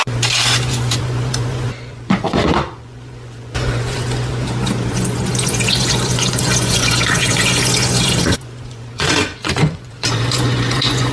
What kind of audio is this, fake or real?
fake